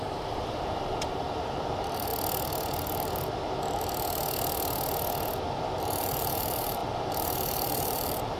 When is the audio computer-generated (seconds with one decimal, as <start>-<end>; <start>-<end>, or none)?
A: 0.0-2.1; 5.8-8.4